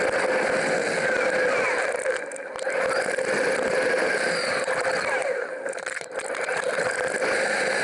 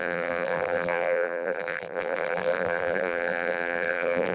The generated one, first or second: second